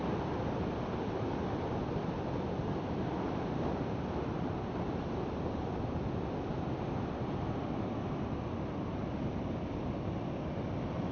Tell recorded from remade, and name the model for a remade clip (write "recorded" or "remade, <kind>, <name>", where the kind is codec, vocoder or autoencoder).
recorded